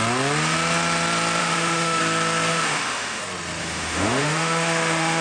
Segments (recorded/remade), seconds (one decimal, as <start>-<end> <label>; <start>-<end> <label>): 0.0-1.4 recorded; 1.4-2.0 remade; 2.0-2.5 recorded; 2.5-3.2 remade; 3.2-3.6 recorded; 3.6-5.2 remade

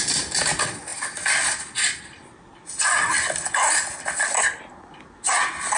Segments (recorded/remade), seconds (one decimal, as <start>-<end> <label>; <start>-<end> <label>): 0.0-5.8 recorded

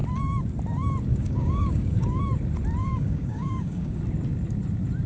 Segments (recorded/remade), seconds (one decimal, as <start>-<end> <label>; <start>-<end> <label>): 0.0-1.1 recorded; 1.1-2.2 remade; 2.2-2.8 recorded; 2.8-4.0 remade; 4.0-5.1 recorded

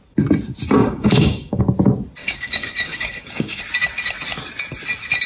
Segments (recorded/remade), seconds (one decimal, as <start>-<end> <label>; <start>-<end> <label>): 0.0-0.8 recorded; 0.8-1.6 remade; 1.6-2.2 recorded; 2.2-3.6 remade; 3.6-5.3 recorded

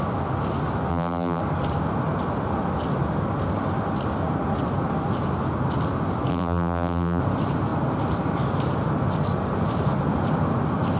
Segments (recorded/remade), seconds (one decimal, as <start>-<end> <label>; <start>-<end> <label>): 0.0-0.9 recorded; 0.9-1.4 remade; 1.4-6.3 recorded; 6.3-7.2 remade; 7.2-11.0 recorded

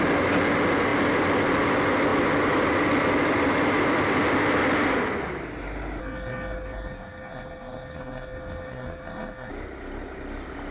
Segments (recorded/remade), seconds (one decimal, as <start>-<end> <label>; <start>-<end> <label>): 0.0-6.0 recorded; 6.0-9.5 remade; 9.5-10.7 recorded

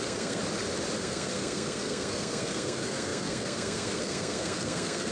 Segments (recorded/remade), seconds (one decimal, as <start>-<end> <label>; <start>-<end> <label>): 0.0-0.4 remade; 0.4-1.0 recorded; 1.0-5.1 remade

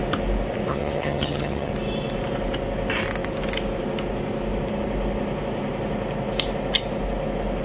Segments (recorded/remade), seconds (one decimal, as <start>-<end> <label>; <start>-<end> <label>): 0.0-0.7 recorded; 0.7-1.7 remade; 1.7-7.6 recorded